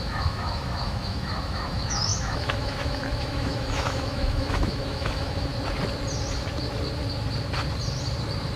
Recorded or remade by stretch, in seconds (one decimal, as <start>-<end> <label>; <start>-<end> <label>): 0.0-5.5 remade; 5.5-8.6 recorded